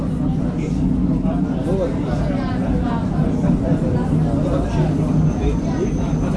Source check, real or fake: real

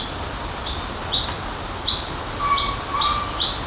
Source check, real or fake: real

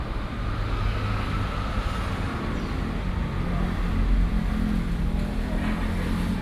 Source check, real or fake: real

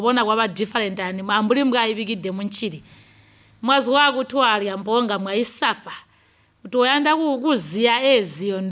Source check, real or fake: real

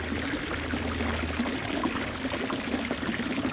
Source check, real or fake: real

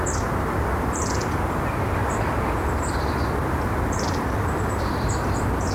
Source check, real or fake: real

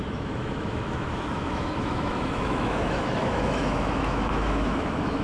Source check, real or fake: fake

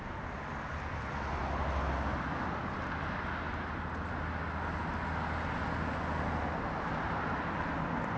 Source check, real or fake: real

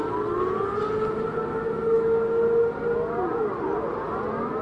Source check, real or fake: real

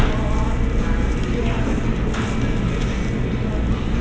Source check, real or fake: real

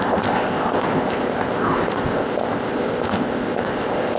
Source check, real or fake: fake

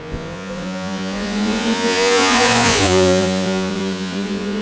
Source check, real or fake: fake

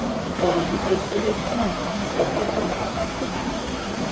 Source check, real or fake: fake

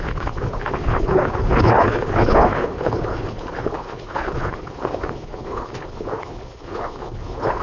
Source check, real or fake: fake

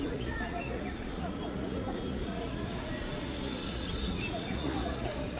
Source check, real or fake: fake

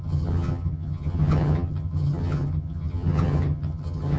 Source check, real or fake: fake